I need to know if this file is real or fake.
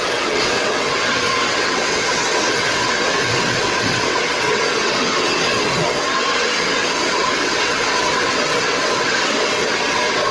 fake